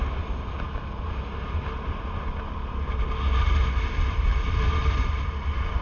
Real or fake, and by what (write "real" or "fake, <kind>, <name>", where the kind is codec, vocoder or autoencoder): real